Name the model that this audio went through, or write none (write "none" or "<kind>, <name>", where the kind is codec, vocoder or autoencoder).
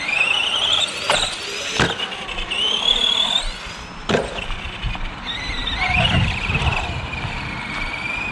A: none